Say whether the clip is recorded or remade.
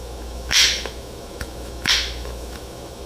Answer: remade